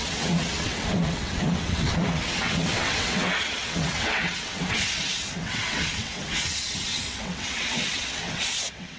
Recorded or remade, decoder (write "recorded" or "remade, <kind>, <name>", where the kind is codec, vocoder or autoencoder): remade, vocoder, WaveNeXt